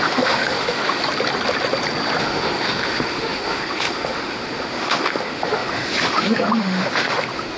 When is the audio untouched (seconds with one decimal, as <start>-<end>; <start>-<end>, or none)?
1.0-2.2